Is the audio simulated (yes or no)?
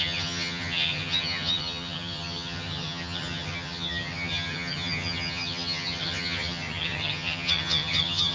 yes